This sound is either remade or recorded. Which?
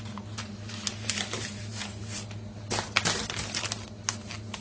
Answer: recorded